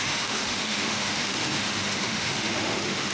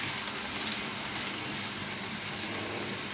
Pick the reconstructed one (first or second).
first